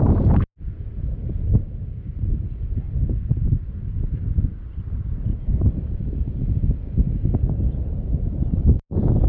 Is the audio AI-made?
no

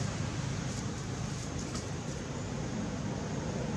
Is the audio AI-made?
yes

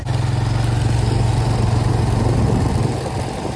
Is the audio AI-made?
no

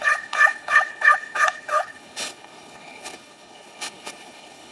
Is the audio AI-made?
yes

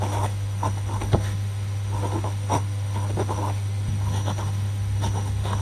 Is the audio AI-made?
yes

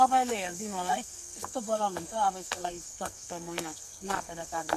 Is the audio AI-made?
yes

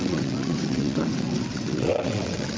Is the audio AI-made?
yes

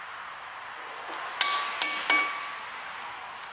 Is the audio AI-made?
no